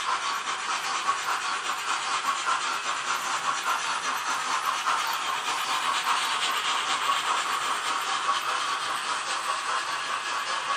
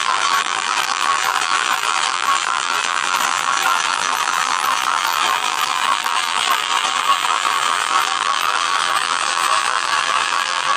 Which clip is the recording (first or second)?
first